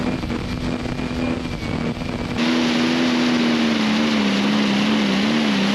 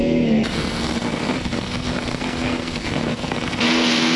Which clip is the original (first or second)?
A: first